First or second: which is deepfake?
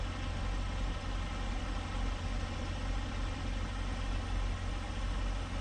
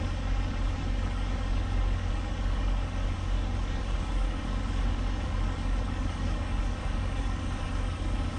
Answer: second